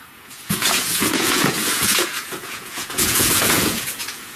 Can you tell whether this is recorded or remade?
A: remade